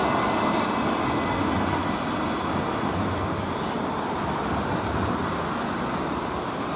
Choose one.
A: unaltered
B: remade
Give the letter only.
A